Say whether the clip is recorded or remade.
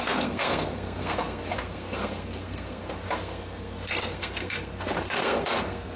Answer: remade